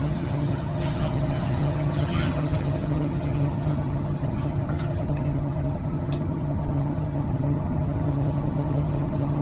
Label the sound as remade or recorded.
remade